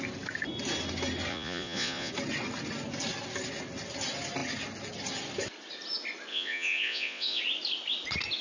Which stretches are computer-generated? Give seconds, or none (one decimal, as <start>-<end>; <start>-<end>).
1.3-2.1; 6.3-7.4